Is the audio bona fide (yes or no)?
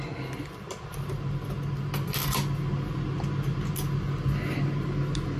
yes